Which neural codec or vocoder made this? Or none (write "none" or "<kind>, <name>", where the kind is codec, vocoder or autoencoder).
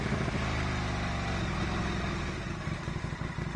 none